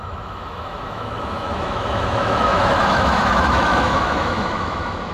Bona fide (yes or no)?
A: no